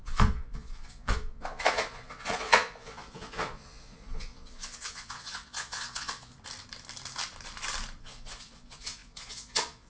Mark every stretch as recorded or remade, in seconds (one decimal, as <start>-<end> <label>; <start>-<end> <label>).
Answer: 0.0-6.3 remade; 6.3-8.0 recorded; 8.0-9.9 remade